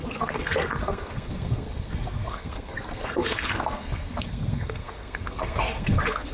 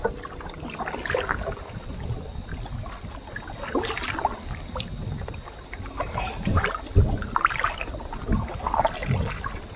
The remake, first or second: first